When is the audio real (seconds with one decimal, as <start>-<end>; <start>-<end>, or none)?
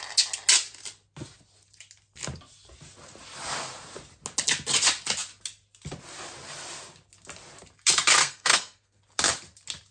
0.0-8.2; 9.0-9.9